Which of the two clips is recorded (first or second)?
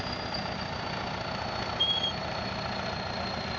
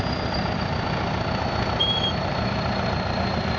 first